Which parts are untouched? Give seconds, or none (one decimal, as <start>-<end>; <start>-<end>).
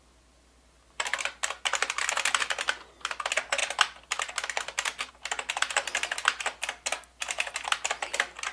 0.0-8.5